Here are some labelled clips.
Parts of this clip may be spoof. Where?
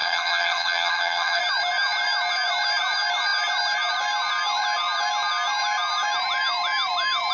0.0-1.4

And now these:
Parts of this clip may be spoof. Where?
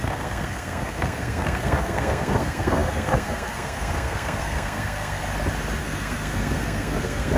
0.0-5.2; 5.8-7.4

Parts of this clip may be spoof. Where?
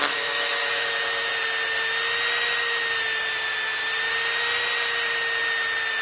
0.0-0.9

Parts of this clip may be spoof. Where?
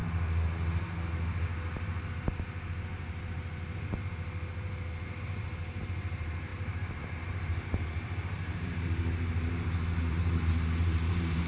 5.0-11.5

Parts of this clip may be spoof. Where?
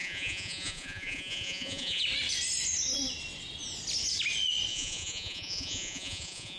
0.0-2.0; 4.7-6.6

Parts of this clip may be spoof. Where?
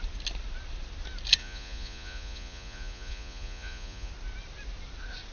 1.4-4.1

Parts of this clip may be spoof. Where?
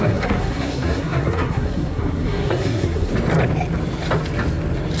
0.0-3.1